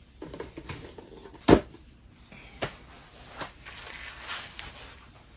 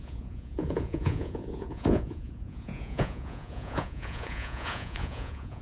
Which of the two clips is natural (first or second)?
first